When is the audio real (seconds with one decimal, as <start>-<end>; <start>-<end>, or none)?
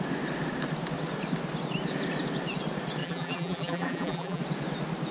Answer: 0.0-3.0; 4.4-5.1